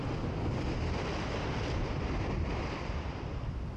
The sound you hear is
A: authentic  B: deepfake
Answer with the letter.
A